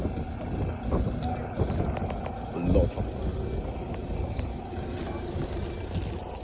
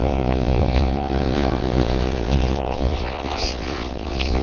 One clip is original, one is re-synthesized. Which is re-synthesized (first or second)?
second